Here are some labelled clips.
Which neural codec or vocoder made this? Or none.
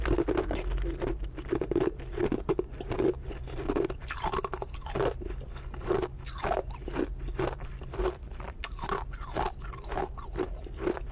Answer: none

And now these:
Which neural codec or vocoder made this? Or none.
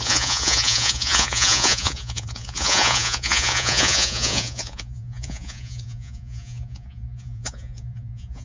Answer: vocoder, Vocos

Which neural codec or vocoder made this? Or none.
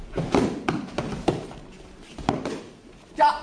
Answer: none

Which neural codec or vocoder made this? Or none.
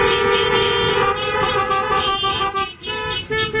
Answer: vocoder, BigVGAN v2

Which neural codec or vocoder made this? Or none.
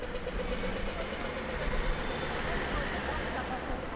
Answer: none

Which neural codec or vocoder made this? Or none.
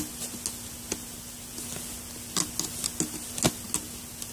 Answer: none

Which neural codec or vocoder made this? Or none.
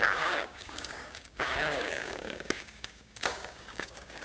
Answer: codec, DAC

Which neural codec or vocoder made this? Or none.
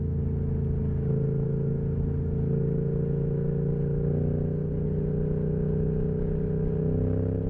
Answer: none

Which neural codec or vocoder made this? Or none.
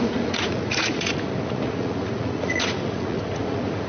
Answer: vocoder, Vocos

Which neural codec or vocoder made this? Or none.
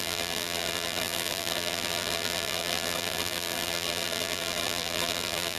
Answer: vocoder, BigVGAN v2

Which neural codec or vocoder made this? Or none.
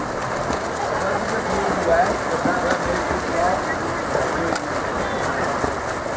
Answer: none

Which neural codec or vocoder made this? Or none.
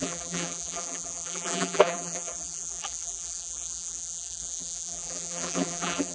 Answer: vocoder, BigVGAN v2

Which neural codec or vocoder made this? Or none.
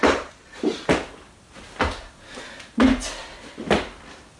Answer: none